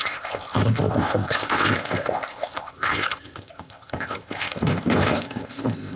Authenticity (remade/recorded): remade